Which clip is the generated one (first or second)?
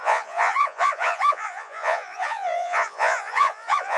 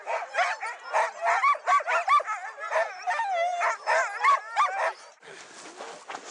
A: first